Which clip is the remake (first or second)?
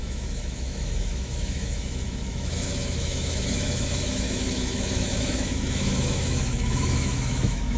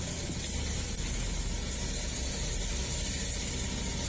first